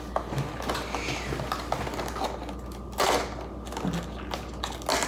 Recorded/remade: recorded